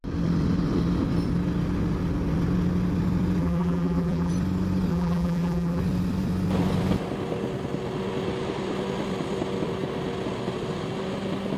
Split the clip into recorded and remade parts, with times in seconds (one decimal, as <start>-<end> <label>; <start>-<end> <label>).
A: 0.0-3.4 recorded; 3.4-4.3 remade; 4.3-4.9 recorded; 4.9-5.8 remade; 5.8-11.6 recorded